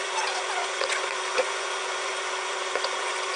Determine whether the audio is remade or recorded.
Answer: remade